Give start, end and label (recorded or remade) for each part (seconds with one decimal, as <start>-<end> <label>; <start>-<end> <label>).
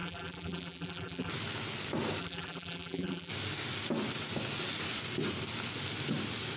0.0-1.3 remade; 1.3-2.2 recorded; 2.2-3.3 remade; 3.3-6.6 recorded